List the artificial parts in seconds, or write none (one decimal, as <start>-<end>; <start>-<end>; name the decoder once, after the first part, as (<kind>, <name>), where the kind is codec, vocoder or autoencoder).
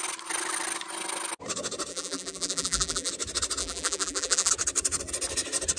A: 1.9-3.1 (vocoder, BigVGAN v2); 3.6-4.5